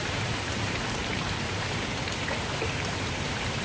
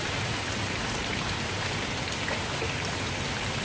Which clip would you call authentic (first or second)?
second